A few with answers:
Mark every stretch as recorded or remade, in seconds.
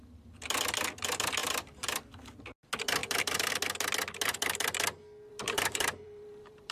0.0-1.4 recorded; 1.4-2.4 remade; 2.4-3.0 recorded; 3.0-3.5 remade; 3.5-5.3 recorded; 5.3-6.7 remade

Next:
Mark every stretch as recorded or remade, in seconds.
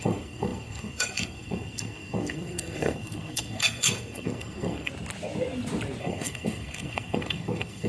0.0-4.9 remade; 4.9-6.0 recorded; 6.0-7.9 remade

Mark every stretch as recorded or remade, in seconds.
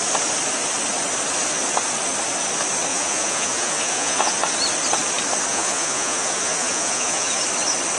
0.0-2.9 recorded; 2.9-4.3 remade; 4.3-5.5 recorded; 5.5-7.4 remade; 7.4-8.0 recorded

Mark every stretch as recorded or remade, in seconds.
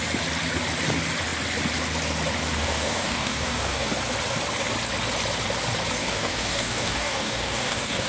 0.0-2.5 recorded; 2.5-3.9 remade; 3.9-6.0 recorded; 6.0-8.1 remade